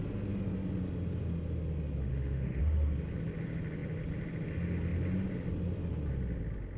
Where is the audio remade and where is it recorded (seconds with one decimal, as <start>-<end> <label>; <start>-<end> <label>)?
0.0-2.1 recorded; 2.1-2.6 remade; 2.6-6.8 recorded